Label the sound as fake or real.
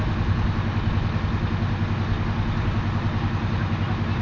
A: real